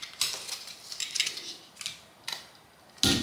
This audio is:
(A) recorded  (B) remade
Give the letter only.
A